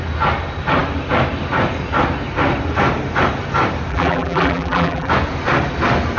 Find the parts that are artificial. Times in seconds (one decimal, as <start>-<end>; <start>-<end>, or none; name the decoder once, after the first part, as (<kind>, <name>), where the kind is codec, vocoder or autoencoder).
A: 3.9-5.1 (vocoder, BigVGAN v2)